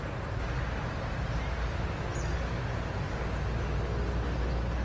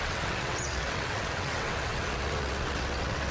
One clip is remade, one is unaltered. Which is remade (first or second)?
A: second